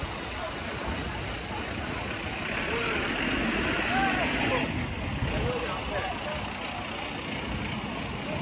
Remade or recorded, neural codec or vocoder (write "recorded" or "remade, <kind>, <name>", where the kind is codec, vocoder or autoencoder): recorded